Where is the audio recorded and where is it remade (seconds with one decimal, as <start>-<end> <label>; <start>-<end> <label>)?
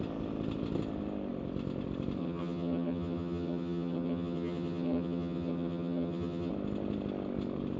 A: 0.0-2.2 recorded; 2.2-6.5 remade; 6.5-7.8 recorded